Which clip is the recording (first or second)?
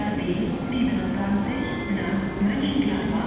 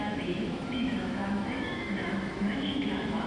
first